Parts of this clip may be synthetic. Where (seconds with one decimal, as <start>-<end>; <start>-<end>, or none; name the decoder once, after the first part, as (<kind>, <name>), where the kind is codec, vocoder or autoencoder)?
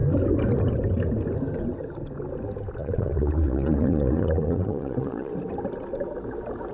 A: 2.8-5.3 (vocoder, Vocos)